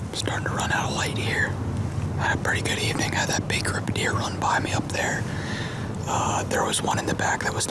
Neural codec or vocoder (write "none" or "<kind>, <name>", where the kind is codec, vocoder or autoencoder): none